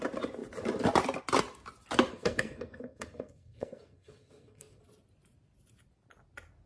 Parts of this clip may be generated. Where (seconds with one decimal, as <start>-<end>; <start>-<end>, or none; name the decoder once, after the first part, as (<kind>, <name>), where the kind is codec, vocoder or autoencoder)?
2.1-4.8 (codec, SNAC)